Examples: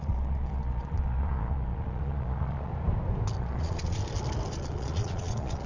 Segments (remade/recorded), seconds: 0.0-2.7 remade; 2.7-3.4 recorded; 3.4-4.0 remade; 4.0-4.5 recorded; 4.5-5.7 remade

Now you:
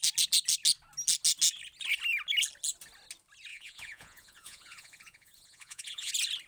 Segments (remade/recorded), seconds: 0.0-3.5 recorded; 3.5-6.1 remade; 6.1-6.5 recorded

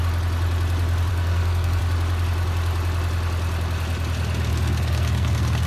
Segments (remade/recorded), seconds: 0.0-1.1 recorded; 1.1-1.8 remade; 1.8-4.5 recorded; 4.5-5.7 remade